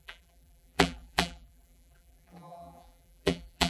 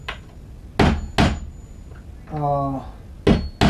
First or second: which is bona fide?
second